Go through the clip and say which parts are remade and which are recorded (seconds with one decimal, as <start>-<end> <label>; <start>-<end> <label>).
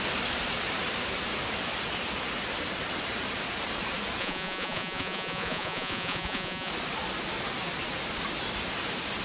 0.0-4.2 recorded; 4.2-6.7 remade; 6.7-9.2 recorded